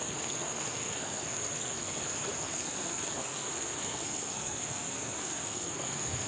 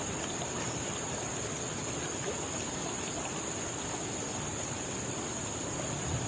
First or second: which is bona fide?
second